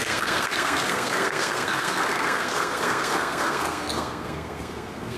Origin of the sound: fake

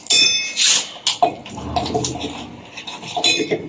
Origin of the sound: real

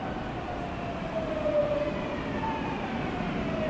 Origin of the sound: real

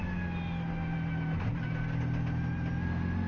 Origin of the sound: real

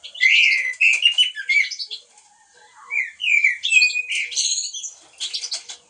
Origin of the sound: real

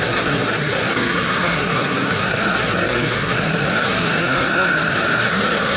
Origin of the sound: fake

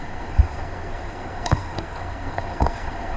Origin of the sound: fake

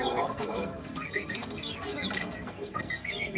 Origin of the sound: fake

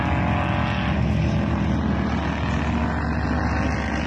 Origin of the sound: real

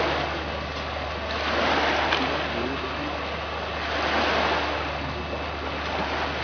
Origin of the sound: real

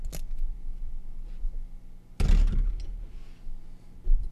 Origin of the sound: real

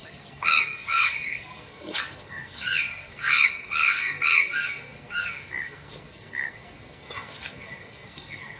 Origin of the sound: fake